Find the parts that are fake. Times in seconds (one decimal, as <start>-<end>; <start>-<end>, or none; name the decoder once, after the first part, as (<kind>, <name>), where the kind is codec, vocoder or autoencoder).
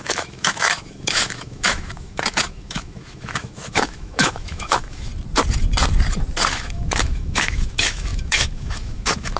0.0-5.1 (autoencoder, DAC-VAE); 6.5-9.4